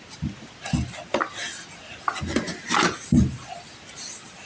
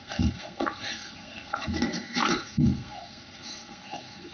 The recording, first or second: first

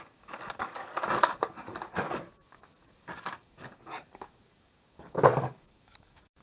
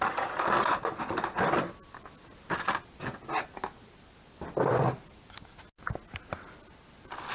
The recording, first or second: second